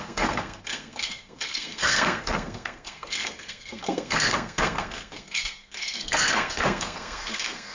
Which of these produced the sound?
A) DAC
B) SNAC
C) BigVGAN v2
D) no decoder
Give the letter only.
B